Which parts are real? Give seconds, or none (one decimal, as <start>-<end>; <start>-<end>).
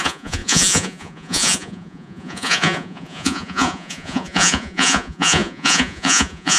none